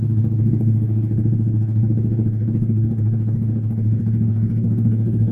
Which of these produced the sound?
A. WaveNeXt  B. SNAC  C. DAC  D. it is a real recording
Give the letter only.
C